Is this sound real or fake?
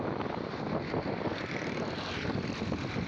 real